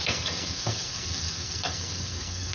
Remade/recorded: remade